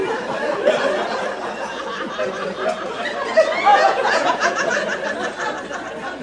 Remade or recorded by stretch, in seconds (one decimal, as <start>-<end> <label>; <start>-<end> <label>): 0.0-3.7 recorded; 3.7-4.7 remade; 4.7-6.2 recorded